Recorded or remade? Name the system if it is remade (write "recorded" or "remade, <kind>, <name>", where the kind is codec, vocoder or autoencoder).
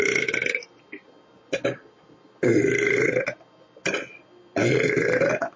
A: recorded